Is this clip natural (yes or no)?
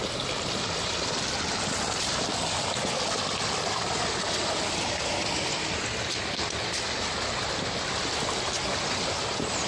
yes